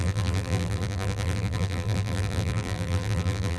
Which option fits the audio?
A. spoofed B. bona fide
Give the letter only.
A